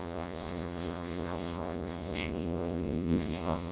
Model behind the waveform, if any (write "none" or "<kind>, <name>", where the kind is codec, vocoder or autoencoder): vocoder, Vocos